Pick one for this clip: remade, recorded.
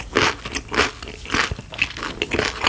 recorded